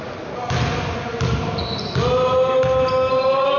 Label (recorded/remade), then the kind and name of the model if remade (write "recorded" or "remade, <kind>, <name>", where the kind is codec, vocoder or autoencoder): recorded